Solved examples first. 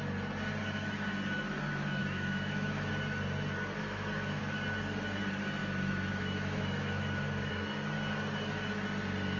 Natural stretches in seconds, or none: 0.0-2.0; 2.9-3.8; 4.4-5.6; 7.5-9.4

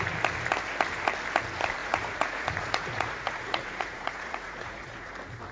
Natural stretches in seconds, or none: 0.0-1.8; 5.1-5.5

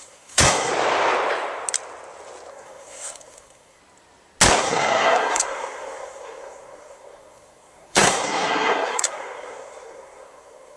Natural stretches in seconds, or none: 0.7-2.5; 3.8-4.6

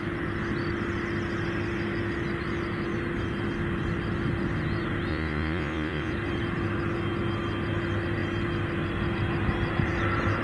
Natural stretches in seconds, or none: 0.0-5.1; 6.1-10.4

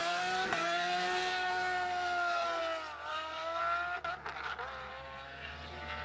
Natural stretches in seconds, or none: 2.6-3.1; 3.6-4.9; 5.5-6.0

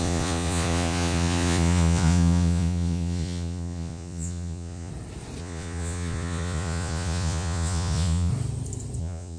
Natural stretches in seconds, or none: 4.9-5.4; 8.3-9.0

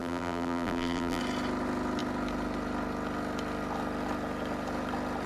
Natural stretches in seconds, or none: 1.2-5.3